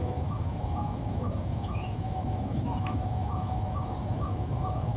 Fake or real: fake